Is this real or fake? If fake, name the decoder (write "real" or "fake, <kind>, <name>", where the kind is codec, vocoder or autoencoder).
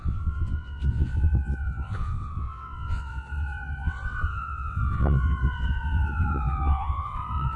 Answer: fake, vocoder, WaveNeXt